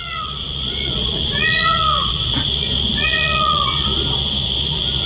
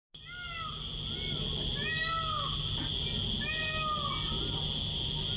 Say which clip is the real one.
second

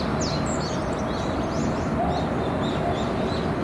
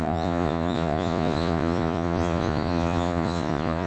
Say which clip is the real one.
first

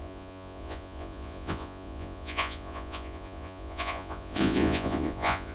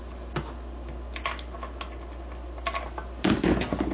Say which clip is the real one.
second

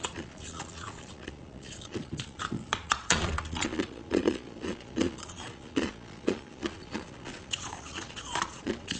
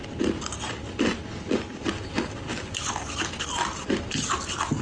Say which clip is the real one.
second